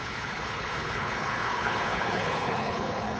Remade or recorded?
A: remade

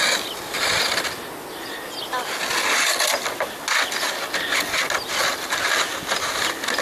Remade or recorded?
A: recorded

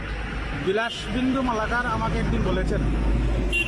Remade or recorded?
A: recorded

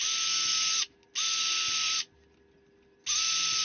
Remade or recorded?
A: recorded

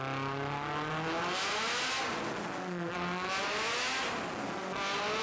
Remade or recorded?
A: recorded